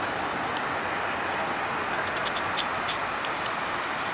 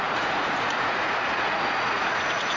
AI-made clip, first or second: second